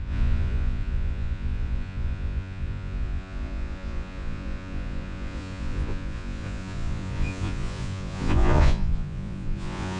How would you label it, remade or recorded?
remade